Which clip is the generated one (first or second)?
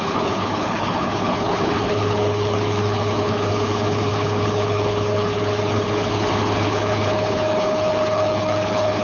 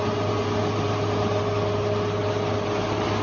first